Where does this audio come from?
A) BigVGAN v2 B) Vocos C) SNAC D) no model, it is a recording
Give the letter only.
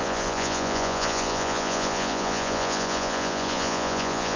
B